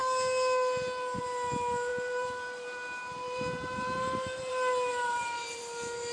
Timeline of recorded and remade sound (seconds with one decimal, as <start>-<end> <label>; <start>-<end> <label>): 0.0-1.9 recorded; 1.9-4.5 remade; 4.5-4.9 recorded; 4.9-5.6 remade; 5.6-6.1 recorded